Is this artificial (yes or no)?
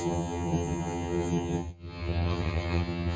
yes